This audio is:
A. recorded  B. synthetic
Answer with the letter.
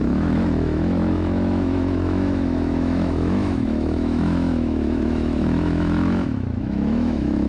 B